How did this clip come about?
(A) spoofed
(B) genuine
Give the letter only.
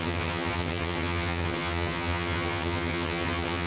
A